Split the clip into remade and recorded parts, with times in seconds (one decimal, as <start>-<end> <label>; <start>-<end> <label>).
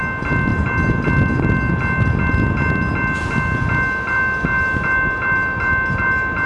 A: 0.0-6.5 recorded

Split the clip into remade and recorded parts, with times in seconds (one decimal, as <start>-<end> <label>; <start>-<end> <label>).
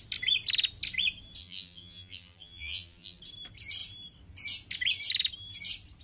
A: 0.0-1.4 recorded; 1.4-3.2 remade; 3.2-6.0 recorded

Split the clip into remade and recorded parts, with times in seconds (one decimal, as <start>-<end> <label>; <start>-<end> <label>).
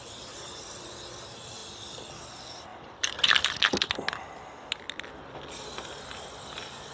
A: 0.0-1.6 recorded; 1.6-2.1 remade; 2.1-2.7 recorded; 2.7-3.5 remade; 3.5-6.9 recorded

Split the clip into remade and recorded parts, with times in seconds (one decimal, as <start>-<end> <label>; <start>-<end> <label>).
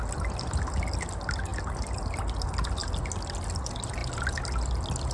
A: 0.0-5.1 recorded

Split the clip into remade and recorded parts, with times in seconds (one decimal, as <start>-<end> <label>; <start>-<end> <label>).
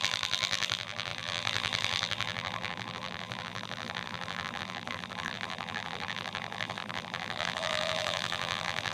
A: 0.0-8.9 remade